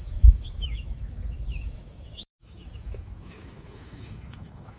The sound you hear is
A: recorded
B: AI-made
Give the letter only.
B